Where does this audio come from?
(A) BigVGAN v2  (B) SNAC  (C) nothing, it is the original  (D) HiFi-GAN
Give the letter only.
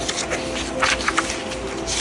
C